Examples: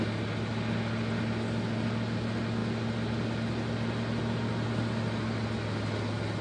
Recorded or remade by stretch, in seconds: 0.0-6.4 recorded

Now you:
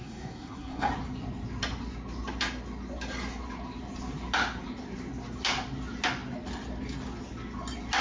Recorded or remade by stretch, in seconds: 0.0-0.9 remade; 0.9-8.0 recorded

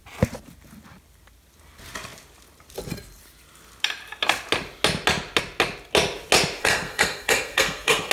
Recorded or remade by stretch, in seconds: 0.0-6.6 recorded; 6.6-8.1 remade

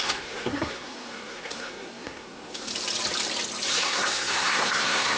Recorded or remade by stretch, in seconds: 0.0-2.7 remade; 2.7-3.7 recorded; 3.7-5.2 remade